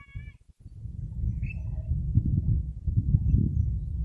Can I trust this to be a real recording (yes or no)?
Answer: yes